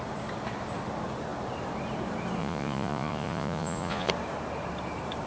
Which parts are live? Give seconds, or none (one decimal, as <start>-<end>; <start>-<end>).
0.0-2.4; 4.1-5.3